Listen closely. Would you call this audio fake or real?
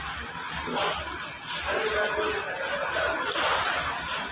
real